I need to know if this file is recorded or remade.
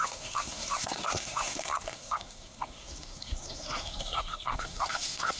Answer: remade